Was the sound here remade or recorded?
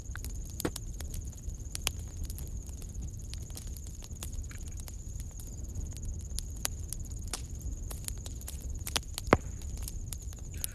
recorded